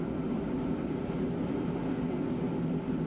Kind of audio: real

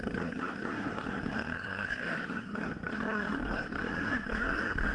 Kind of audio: fake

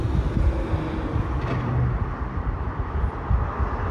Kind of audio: real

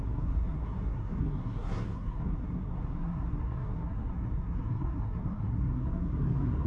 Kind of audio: fake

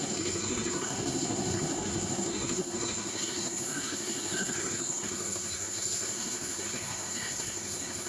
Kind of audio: fake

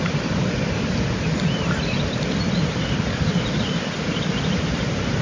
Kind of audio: real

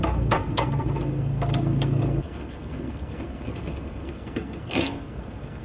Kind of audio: fake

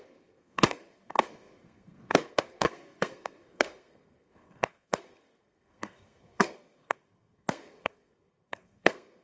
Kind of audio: fake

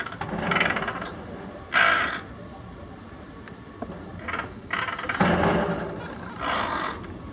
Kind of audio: real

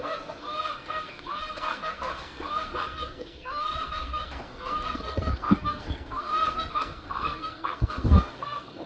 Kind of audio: fake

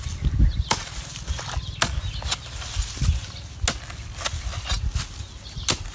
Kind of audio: real